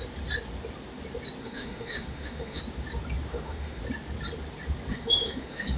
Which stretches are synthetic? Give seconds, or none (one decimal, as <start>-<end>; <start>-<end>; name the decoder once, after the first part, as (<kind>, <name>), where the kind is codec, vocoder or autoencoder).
1.4-2.6 (autoencoder, DAC-VAE); 3.3-3.8; 4.9-5.8